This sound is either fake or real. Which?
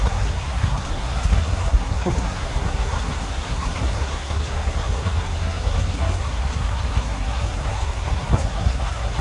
fake